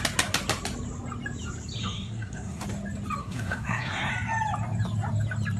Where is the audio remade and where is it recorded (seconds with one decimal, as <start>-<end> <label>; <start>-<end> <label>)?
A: 0.0-1.8 recorded; 1.8-2.6 remade; 2.6-3.2 recorded; 3.2-4.1 remade; 4.1-5.6 recorded